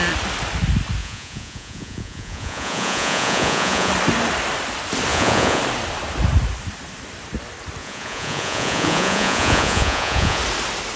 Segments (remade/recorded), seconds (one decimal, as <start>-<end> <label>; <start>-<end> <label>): 0.0-1.0 recorded; 1.0-3.9 remade; 3.9-5.1 recorded; 5.1-5.6 remade; 5.6-7.8 recorded; 7.8-10.4 remade; 10.4-11.0 recorded